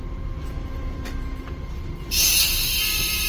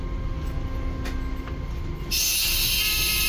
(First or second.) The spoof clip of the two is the first